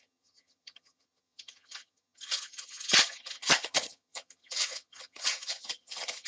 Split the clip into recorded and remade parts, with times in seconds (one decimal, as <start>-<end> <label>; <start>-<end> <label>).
0.0-6.3 remade